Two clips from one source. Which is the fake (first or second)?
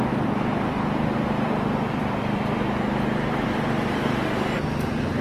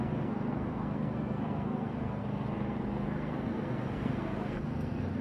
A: second